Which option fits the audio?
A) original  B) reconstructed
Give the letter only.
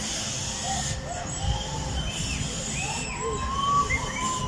A